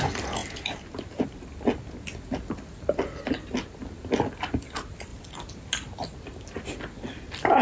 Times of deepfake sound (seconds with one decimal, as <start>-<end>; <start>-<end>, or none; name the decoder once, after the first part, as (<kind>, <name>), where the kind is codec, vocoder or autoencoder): none

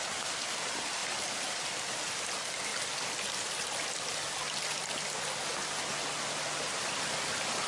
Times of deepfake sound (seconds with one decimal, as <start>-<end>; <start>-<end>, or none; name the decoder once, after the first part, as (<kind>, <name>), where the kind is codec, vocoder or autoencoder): 1.0-1.7 (vocoder, BigVGAN v2); 2.7-3.9

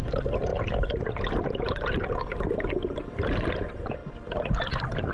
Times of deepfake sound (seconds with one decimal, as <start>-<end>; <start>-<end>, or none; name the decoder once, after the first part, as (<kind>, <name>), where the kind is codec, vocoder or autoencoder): 0.0-4.0 (vocoder, BigVGAN v2)

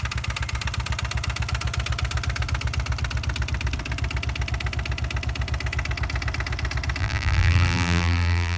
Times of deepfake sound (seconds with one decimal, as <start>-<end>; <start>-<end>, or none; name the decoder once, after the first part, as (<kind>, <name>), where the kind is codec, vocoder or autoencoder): 7.0-8.6 (vocoder, BigVGAN v2)

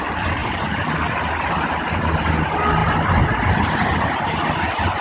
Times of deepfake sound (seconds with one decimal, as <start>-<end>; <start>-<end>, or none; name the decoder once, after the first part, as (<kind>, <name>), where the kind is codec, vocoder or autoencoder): 0.4-1.2 (vocoder, BigVGAN v2)

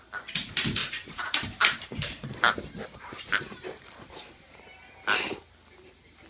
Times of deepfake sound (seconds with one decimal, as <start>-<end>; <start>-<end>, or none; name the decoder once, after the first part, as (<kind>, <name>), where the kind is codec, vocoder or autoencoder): 0.8-4.6 (vocoder, BigVGAN v2)